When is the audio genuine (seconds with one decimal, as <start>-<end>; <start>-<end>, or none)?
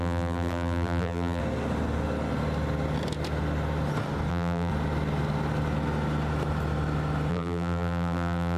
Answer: 1.4-4.3; 4.7-7.3